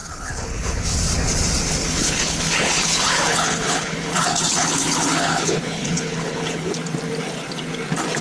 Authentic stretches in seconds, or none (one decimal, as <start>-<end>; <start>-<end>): 1.0-1.8; 6.7-8.2